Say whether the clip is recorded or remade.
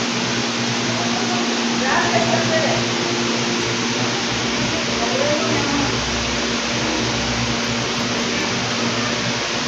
recorded